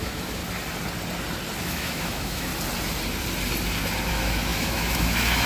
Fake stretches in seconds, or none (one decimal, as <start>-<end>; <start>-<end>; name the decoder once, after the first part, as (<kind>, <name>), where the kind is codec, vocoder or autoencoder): 0.0-0.4 (autoencoder, DAC-VAE); 1.6-2.5; 4.1-5.5